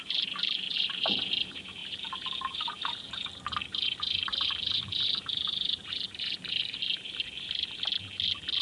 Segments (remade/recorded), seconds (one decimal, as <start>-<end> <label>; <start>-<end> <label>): 0.0-7.9 remade; 7.9-8.6 recorded